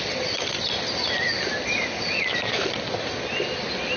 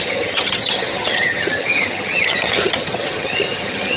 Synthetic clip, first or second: second